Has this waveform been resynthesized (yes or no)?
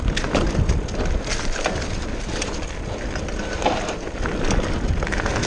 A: no